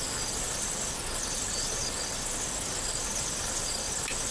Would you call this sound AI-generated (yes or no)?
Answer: no